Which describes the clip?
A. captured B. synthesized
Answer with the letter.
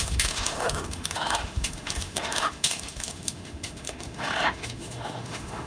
B